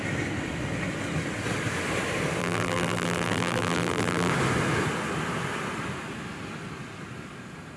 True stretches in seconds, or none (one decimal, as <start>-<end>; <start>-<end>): 0.0-2.4; 4.3-7.8